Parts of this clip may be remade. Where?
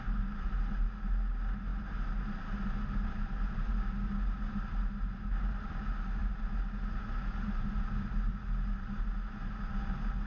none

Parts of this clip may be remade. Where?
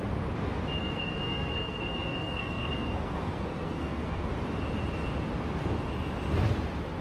0.8-4.3